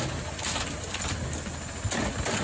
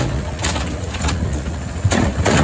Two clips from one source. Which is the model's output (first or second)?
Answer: second